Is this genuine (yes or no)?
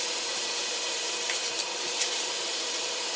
no